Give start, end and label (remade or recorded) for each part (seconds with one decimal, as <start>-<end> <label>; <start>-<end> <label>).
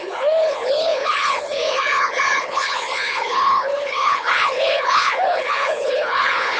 0.0-6.6 remade